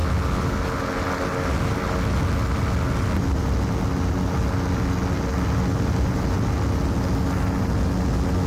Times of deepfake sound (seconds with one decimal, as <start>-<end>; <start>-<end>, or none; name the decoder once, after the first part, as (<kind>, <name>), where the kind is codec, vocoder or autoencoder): none